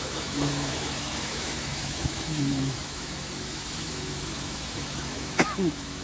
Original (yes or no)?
no